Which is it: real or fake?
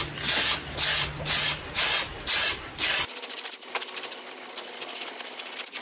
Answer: real